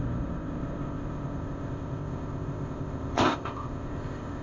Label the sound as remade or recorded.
remade